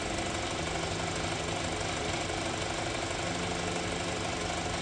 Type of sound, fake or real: real